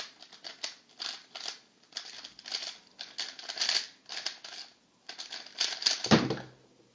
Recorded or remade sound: recorded